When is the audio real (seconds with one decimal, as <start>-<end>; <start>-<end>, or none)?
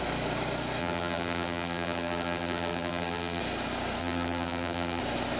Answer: 0.0-0.8; 3.4-4.0; 5.0-5.4